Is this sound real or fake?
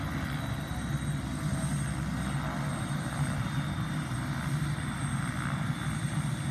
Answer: real